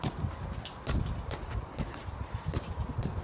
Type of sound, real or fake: real